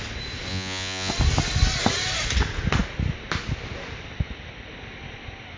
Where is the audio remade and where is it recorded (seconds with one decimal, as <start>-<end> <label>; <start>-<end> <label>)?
0.0-0.5 recorded; 0.5-1.1 remade; 1.1-5.6 recorded